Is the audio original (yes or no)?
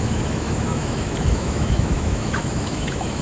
no